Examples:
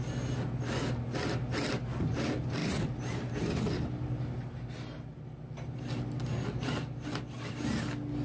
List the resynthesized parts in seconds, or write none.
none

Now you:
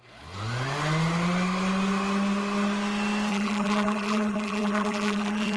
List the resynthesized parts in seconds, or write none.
3.3-5.6 (vocoder, BigVGAN v2)

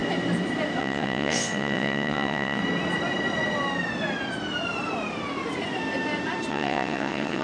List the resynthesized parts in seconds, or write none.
0.8-2.6 (vocoder, WaveNeXt); 6.5-7.4

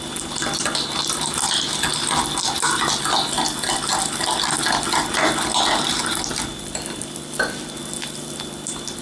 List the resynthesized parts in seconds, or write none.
none

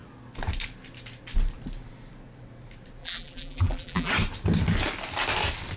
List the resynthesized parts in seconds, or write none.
3.0-4.1 (vocoder, BigVGAN v2)